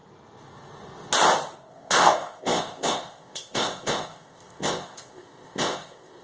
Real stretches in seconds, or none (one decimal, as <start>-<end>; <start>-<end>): 0.0-1.7